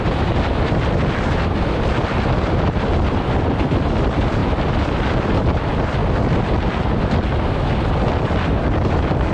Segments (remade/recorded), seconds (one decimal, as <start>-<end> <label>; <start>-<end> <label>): 0.0-4.4 remade; 4.4-5.3 recorded; 5.3-6.0 remade; 6.0-8.1 recorded; 8.1-9.3 remade

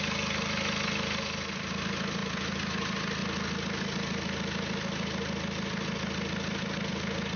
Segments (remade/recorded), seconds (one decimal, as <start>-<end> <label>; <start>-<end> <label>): 0.0-2.2 recorded; 2.2-2.7 remade; 2.7-7.4 recorded